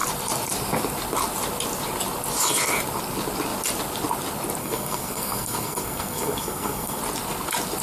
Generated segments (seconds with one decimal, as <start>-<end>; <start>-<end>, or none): 4.6-7.0